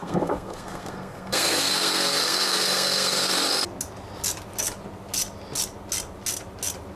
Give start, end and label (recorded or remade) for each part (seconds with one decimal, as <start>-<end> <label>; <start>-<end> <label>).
0.0-3.3 remade; 3.3-7.0 recorded